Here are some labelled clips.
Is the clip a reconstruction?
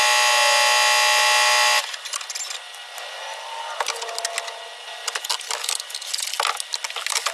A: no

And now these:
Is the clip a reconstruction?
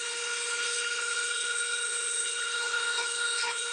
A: yes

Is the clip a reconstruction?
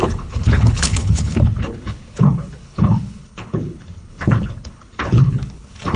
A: yes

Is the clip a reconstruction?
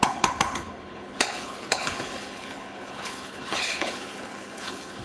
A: yes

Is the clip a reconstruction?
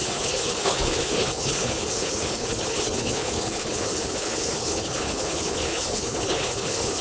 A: yes